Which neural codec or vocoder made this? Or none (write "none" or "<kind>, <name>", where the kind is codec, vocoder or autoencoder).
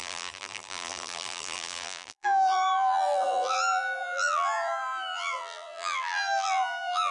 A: vocoder, BigVGAN v2